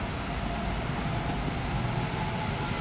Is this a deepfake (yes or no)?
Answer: no